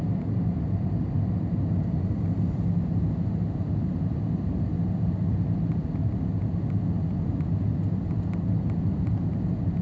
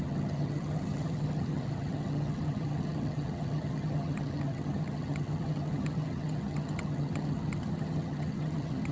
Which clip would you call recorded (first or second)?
first